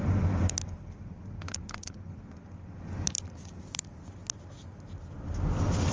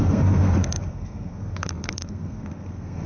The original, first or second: first